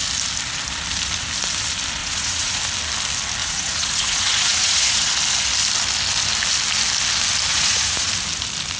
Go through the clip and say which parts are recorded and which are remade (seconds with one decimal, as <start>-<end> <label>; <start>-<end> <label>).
0.0-2.0 recorded; 2.0-2.6 remade; 2.6-3.4 recorded; 3.4-5.1 remade; 5.1-7.5 recorded; 7.5-8.1 remade; 8.1-8.8 recorded